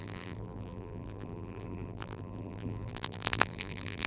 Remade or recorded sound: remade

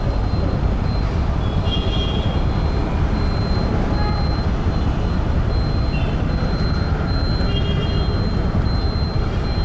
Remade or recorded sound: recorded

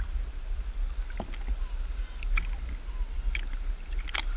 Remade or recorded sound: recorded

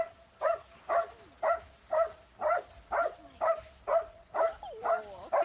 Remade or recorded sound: recorded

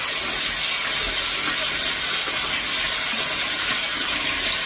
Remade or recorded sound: recorded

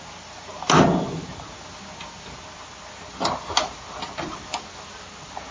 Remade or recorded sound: recorded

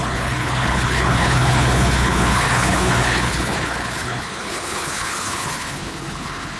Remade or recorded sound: remade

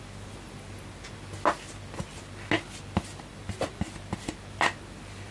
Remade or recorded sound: recorded